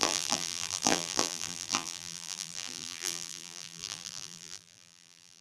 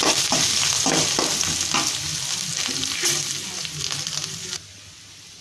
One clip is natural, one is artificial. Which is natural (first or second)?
second